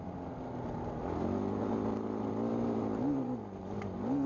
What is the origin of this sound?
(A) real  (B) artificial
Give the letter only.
A